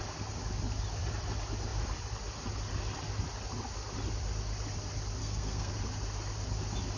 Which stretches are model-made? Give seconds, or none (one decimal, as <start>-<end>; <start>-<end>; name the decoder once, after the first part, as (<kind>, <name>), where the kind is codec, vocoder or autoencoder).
5.2-5.7 (codec, SNAC)